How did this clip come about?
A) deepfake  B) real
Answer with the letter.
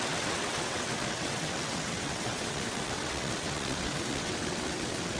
A